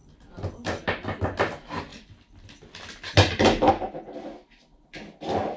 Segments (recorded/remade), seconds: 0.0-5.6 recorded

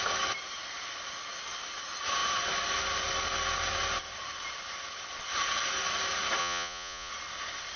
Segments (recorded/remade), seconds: 0.0-6.4 recorded; 6.4-7.1 remade; 7.1-7.8 recorded

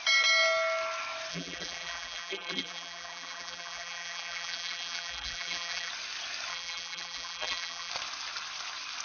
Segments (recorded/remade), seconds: 0.0-1.3 recorded; 1.3-5.9 remade; 5.9-6.5 recorded; 6.5-7.9 remade; 7.9-9.0 recorded

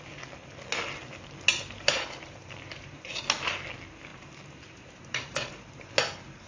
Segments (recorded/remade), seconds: 0.0-1.5 recorded; 1.5-3.1 remade; 3.1-4.1 recorded; 4.1-5.6 remade; 5.6-6.5 recorded

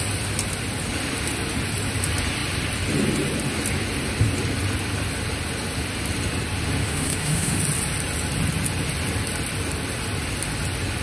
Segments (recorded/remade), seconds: 0.0-6.8 recorded; 6.8-7.6 remade; 7.6-11.0 recorded